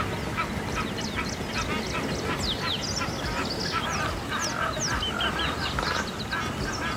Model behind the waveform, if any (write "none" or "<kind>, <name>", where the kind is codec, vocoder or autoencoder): none